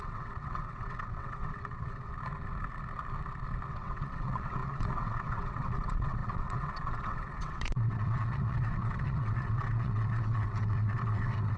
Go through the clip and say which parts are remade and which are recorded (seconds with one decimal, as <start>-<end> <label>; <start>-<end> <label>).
0.0-2.1 remade; 2.1-3.7 recorded; 3.7-11.6 remade